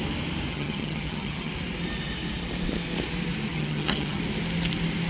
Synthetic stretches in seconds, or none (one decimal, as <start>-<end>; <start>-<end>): 0.5-1.5; 3.5-4.2